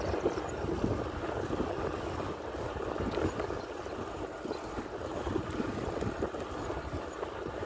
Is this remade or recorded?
remade